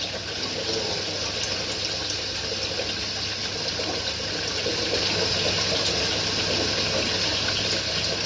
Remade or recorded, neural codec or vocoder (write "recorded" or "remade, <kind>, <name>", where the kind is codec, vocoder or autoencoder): recorded